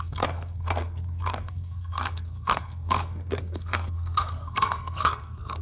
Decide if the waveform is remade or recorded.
remade